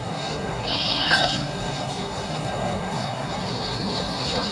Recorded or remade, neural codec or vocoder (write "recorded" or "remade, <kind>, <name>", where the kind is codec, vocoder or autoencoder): remade, codec, SNAC